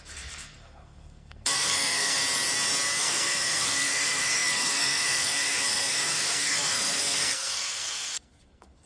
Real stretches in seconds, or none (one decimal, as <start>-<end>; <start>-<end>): 2.2-3.0